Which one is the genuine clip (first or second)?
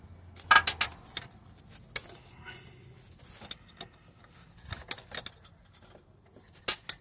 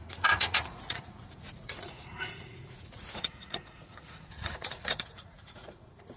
first